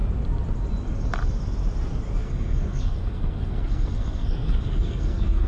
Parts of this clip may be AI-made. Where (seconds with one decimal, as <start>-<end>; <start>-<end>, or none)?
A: 2.2-5.5